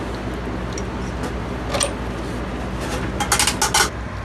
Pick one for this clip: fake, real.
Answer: real